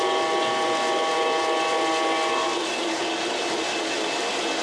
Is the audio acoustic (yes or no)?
yes